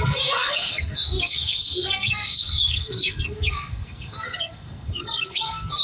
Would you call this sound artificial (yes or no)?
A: yes